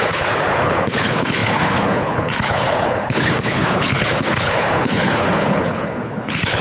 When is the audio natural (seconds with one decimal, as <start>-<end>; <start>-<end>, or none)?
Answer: none

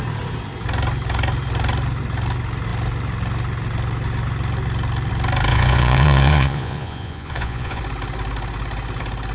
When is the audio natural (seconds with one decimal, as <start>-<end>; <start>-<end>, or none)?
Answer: 0.0-5.5; 7.8-9.3

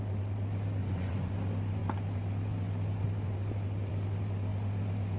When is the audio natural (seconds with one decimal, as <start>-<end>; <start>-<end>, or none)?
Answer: 0.0-0.8; 1.3-5.2